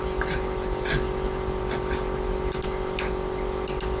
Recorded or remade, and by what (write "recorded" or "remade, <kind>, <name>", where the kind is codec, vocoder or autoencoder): recorded